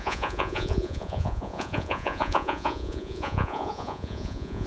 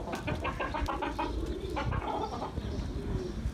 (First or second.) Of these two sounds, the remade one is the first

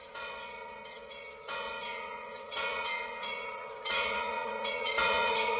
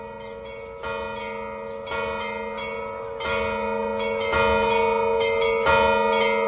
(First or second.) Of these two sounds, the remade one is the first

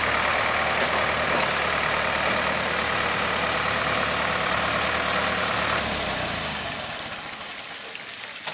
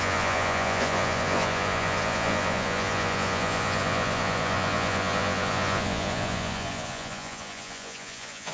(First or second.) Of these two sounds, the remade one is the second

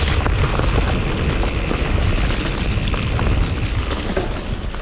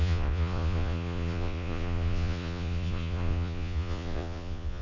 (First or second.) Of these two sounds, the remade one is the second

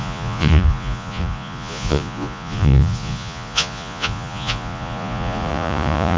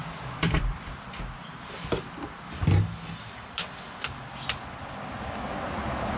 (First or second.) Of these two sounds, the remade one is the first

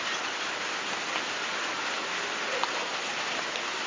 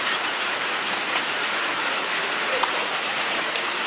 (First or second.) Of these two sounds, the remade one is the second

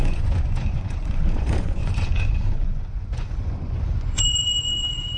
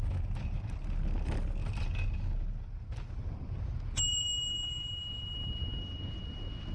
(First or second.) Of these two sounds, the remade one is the first